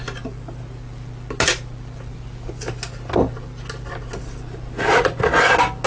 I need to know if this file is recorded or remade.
recorded